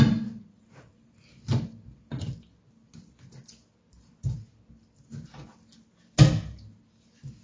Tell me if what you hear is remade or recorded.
recorded